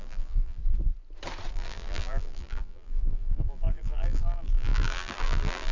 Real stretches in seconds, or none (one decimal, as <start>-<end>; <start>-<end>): 0.6-1.5